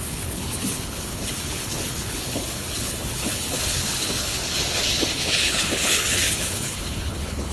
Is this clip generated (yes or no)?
yes